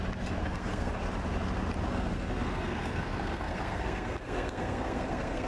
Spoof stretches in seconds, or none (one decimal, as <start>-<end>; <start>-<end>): 0.4-0.9; 1.9-5.5